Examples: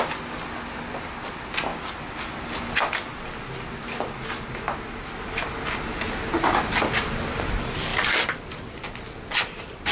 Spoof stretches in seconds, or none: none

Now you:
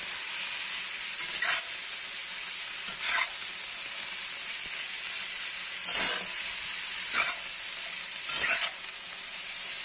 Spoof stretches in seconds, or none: none

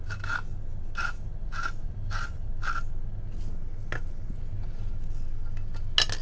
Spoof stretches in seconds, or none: 1.8-2.5 (vocoder, BigVGAN v2)

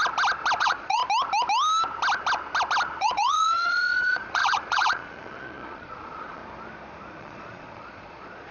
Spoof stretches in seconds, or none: 0.6-1.0 (vocoder, Vocos); 3.0-6.4; 7.2-8.5

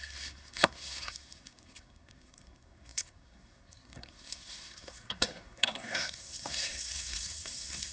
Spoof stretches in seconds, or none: 0.0-7.9 (codec, SNAC)

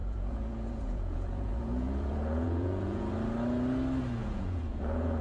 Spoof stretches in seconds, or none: 0.0-3.1 (vocoder, Vocos); 4.2-5.2

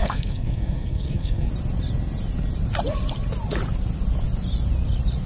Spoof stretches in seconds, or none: 0.0-1.5 (codec, SNAC)

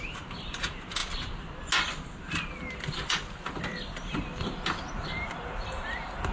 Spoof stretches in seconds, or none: none